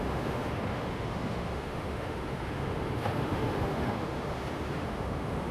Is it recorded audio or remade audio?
remade